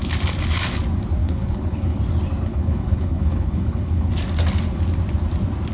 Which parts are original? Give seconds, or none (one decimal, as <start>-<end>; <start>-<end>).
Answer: 0.0-1.2; 2.0-2.5; 4.1-5.7